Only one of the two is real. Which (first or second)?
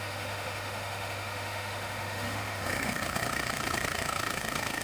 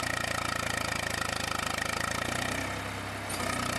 second